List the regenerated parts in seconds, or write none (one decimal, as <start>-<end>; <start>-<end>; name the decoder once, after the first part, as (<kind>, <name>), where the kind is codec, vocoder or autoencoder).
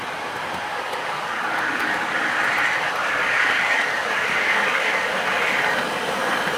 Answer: 0.7-2.3 (codec, DAC); 3.0-5.1